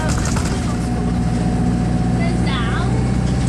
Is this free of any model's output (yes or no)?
yes